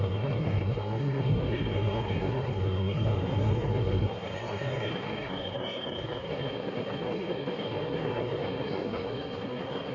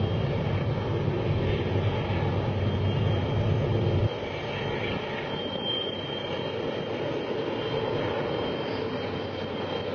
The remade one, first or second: first